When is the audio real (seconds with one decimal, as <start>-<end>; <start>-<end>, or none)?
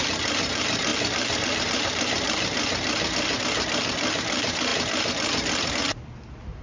0.0-6.6